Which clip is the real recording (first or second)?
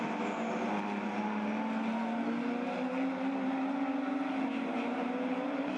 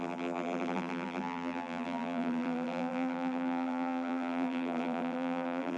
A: first